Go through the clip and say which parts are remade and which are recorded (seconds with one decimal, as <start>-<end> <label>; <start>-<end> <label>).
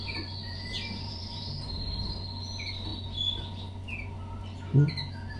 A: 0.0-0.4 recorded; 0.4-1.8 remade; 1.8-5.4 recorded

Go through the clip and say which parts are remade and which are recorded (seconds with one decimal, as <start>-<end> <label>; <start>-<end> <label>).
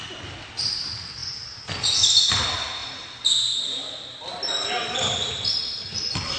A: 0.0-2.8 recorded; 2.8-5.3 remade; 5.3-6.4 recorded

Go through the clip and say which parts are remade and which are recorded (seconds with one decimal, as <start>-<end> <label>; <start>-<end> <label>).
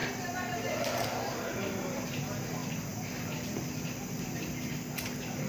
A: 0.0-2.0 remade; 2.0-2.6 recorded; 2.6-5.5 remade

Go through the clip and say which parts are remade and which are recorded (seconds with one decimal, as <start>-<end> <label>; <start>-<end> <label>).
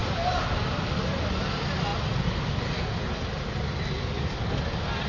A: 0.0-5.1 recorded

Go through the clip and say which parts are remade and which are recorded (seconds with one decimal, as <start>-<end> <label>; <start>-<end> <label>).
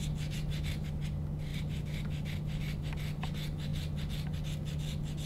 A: 0.0-5.3 recorded